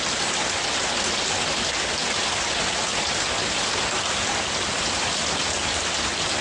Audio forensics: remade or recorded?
recorded